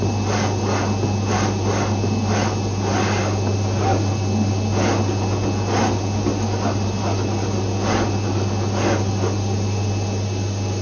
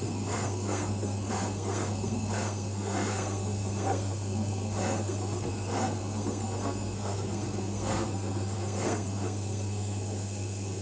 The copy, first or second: second